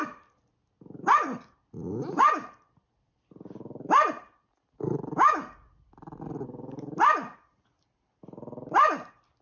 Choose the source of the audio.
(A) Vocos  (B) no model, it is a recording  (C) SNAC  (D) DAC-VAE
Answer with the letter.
B